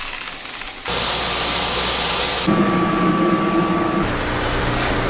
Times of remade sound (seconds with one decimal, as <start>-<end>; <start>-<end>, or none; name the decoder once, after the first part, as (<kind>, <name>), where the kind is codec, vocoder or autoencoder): none